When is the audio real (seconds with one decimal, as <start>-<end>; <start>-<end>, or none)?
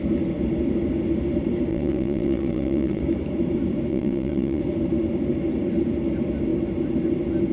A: 0.0-1.7; 3.0-3.9; 4.6-7.5